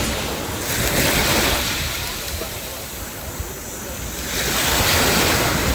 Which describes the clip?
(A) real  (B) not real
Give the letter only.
A